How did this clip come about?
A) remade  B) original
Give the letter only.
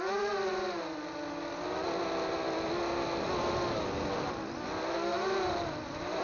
B